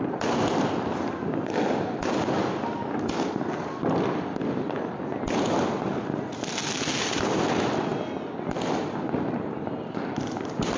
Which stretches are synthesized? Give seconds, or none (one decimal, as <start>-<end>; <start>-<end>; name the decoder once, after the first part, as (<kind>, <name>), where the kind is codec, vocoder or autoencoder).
none